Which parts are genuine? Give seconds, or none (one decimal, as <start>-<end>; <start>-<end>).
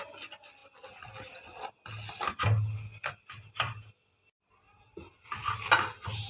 0.0-6.3